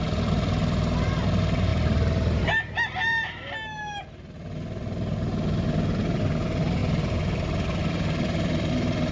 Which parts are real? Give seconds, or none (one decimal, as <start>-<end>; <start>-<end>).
0.0-6.8; 8.7-9.1